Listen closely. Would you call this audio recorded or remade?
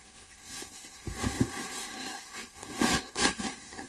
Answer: remade